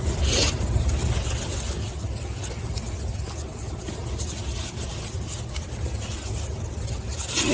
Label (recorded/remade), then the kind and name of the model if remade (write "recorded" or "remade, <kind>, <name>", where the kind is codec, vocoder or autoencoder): recorded